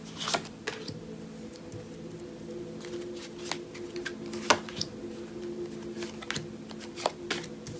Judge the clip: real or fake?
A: real